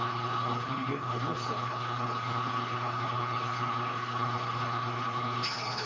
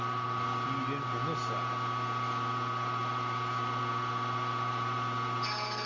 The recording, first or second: second